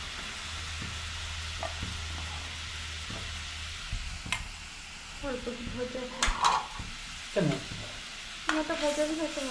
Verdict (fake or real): real